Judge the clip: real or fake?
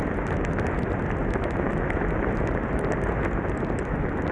real